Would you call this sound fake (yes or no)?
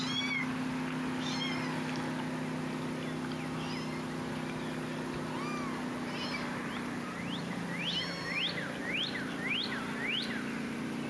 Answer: no